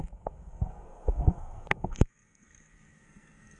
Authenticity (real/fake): fake